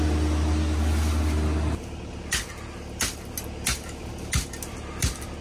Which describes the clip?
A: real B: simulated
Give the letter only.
A